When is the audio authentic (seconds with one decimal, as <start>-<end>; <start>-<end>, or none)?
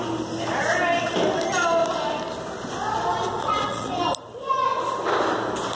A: 0.0-3.1; 3.9-5.7